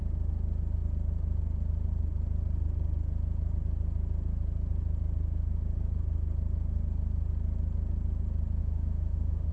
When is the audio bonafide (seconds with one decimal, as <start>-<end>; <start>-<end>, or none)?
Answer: 0.0-8.6